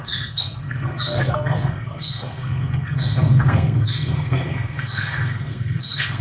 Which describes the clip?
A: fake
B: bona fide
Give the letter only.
A